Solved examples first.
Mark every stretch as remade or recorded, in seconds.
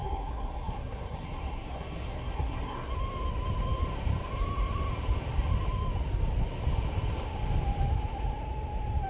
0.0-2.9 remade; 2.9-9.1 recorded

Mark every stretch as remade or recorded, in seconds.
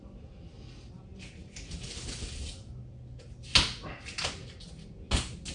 0.0-5.5 recorded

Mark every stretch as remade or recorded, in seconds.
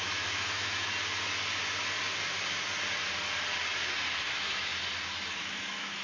0.0-0.9 remade; 0.9-4.2 recorded; 4.2-4.7 remade; 4.7-5.4 recorded; 5.4-6.0 remade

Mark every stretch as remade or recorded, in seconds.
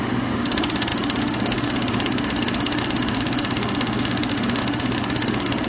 0.0-5.7 remade